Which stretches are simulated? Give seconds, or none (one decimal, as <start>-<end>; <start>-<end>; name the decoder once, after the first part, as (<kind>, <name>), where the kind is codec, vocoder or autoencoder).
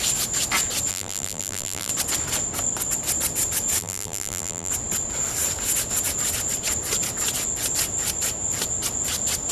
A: 0.9-1.9 (vocoder, BigVGAN v2); 3.8-4.7